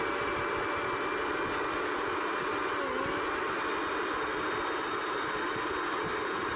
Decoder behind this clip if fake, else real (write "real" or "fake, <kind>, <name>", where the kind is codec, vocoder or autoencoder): real